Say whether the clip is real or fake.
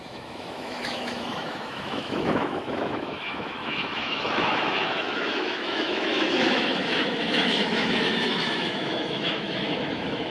fake